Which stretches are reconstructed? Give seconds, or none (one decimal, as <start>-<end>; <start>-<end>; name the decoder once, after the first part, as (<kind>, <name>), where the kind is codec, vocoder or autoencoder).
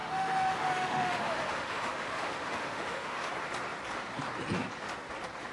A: 0.0-3.3 (autoencoder, DAC-VAE)